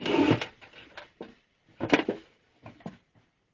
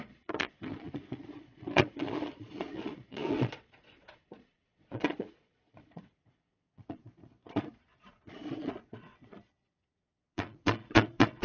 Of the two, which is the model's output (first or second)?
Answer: second